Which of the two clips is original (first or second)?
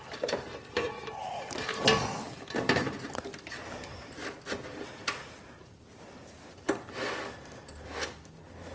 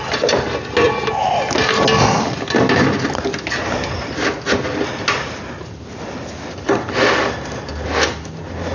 second